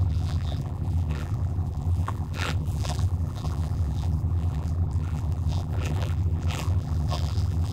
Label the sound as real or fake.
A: fake